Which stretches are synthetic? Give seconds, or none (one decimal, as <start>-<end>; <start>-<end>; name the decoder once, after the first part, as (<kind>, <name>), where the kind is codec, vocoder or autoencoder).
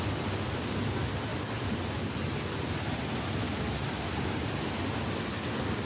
none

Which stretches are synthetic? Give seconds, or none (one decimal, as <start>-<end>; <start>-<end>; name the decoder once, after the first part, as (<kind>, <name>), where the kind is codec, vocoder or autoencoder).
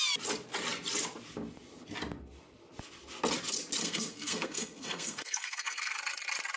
3.8-6.0 (codec, SNAC)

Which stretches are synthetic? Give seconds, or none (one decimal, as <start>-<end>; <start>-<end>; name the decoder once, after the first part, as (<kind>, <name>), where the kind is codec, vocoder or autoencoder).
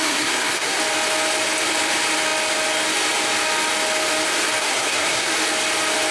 0.0-0.8 (codec, SNAC); 4.6-5.3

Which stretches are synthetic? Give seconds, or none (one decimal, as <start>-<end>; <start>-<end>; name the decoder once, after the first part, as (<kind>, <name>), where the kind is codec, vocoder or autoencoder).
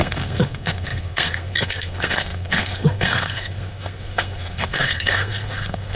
0.0-6.0 (codec, SNAC)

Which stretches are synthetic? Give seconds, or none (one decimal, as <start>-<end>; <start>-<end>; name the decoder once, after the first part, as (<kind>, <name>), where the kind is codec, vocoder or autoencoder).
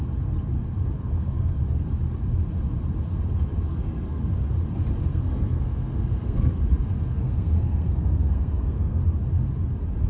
1.0-1.6 (codec, SNAC); 3.7-4.3; 5.1-6.5; 6.9-9.0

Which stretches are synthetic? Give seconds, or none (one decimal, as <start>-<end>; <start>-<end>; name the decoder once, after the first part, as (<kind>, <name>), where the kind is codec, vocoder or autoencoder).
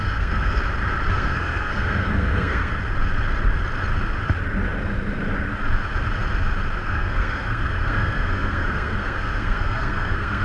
0.0-0.6 (codec, SNAC); 1.1-2.7; 6.8-10.4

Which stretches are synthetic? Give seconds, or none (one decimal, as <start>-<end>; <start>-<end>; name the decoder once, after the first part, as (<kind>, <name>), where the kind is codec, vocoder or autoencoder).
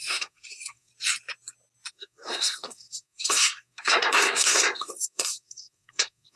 0.0-0.9 (codec, SNAC); 1.9-6.4